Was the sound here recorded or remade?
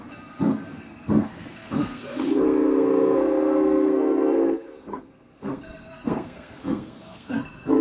remade